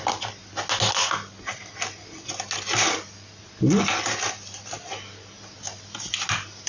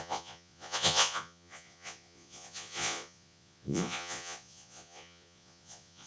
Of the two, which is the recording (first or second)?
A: first